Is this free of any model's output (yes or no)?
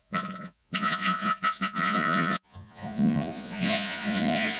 no